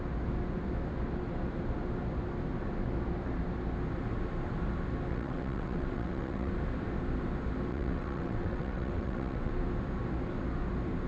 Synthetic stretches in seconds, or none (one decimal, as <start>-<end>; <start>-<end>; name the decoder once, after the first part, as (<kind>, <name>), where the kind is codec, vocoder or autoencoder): 5.1-6.5 (vocoder, WaveNeXt); 7.7-9.5